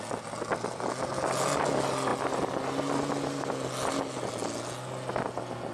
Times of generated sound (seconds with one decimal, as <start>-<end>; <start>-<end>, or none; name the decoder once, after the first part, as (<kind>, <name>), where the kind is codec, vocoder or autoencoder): none

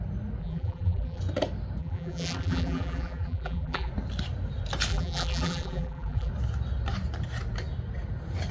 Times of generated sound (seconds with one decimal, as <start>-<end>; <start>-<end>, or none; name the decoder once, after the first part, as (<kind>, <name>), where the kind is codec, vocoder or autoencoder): 0.4-1.2 (vocoder, BigVGAN v2); 1.8-3.9; 4.9-6.3

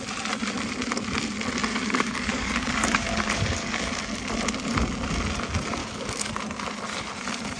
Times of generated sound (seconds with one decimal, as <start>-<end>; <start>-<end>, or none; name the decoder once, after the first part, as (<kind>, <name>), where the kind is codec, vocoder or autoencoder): 1.7-3.9 (codec, DAC); 5.8-6.3

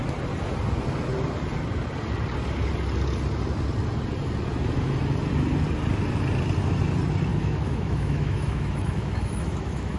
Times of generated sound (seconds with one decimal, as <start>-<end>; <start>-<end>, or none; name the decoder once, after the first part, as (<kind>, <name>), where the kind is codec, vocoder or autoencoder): 7.3-10.0 (autoencoder, DAC-VAE)

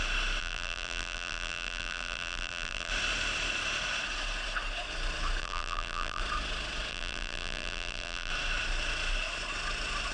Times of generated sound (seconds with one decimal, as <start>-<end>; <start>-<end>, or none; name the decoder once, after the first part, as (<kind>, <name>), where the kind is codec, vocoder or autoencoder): 0.4-2.9 (vocoder, BigVGAN v2); 5.4-6.2; 6.9-8.3